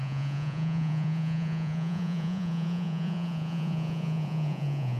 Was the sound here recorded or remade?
remade